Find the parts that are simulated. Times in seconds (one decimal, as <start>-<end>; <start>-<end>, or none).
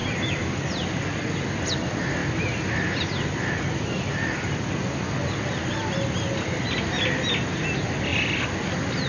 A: none